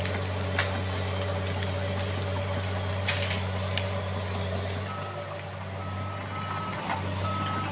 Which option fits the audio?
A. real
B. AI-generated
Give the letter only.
A